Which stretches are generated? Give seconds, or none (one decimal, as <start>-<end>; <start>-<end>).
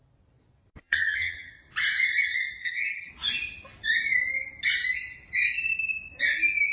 0.8-1.5; 2.6-3.1